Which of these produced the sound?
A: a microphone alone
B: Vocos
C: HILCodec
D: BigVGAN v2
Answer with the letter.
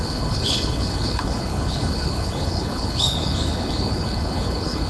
C